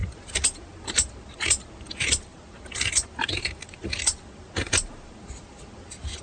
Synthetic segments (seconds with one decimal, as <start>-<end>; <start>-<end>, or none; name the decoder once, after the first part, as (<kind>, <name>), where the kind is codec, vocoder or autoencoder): none